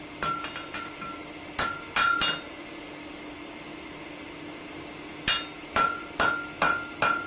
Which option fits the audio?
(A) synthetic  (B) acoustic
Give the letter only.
B